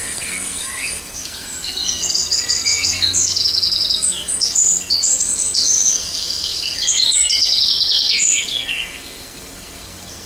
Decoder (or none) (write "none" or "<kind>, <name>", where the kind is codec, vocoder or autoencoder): codec, SNAC